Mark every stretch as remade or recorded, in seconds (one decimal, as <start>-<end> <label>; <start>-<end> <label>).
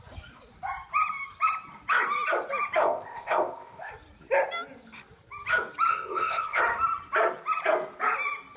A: 0.0-2.8 recorded; 2.8-3.9 remade; 3.9-5.9 recorded; 5.9-6.6 remade; 6.6-8.6 recorded